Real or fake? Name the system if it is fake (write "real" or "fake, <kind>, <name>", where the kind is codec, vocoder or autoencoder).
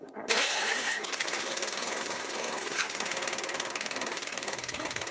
fake, codec, SNAC